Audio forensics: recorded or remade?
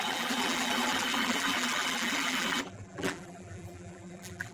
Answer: remade